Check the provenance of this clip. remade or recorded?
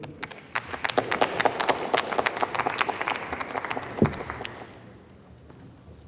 recorded